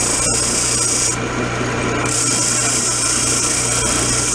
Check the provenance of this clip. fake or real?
real